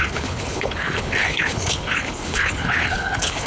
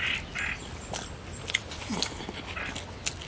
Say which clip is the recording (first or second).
second